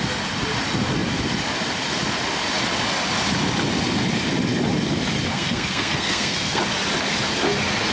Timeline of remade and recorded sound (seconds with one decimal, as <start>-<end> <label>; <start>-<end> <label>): 0.0-5.3 recorded; 5.3-6.6 remade; 6.6-7.9 recorded